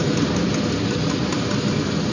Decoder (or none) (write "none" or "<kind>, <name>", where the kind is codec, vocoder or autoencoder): none